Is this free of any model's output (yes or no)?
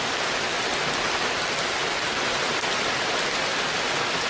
yes